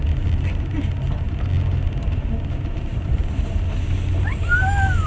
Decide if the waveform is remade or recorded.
recorded